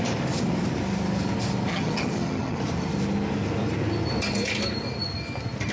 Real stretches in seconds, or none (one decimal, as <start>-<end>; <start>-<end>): 0.0-1.7; 2.6-5.7